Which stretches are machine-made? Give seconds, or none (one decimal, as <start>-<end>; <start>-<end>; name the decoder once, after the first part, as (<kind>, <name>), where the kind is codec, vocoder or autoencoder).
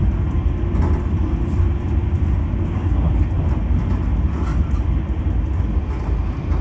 2.4-3.1 (codec, DAC)